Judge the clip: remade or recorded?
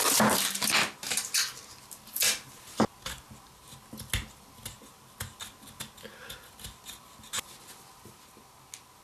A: recorded